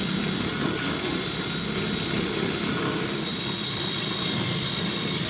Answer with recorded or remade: recorded